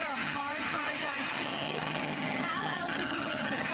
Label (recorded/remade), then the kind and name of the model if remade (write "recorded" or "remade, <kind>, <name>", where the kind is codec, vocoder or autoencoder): remade, vocoder, HiFi-GAN